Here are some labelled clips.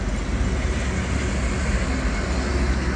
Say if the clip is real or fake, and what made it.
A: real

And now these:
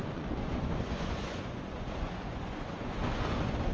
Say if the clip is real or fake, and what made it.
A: fake, vocoder, Vocos